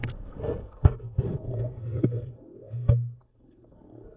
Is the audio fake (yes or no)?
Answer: yes